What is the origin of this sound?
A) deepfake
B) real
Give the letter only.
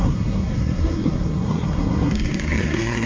A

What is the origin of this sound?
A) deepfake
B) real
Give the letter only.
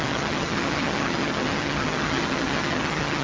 A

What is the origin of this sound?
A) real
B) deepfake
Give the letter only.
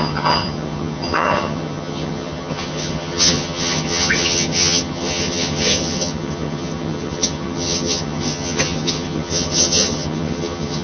B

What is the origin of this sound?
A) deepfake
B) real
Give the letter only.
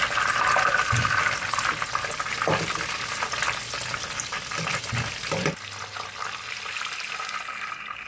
B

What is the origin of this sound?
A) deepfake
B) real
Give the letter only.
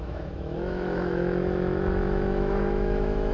A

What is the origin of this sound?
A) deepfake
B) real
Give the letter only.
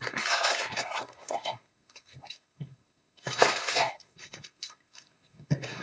A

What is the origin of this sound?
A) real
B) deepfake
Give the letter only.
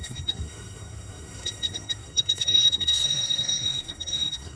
B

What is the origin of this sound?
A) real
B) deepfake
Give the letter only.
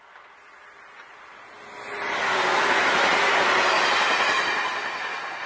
A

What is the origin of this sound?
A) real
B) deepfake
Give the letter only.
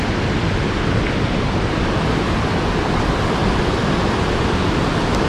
A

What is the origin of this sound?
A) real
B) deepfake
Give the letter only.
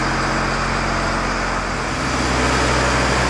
A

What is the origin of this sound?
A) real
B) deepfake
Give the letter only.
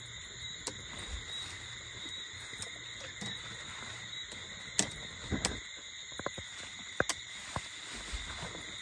A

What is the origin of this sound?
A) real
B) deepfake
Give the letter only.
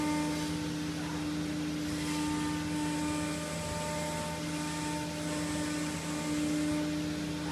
A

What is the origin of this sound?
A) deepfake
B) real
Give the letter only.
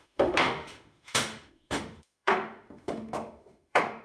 A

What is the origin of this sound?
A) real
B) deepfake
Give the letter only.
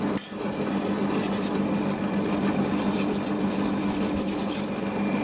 A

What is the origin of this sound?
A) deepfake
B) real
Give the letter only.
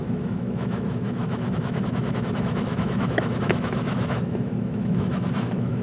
A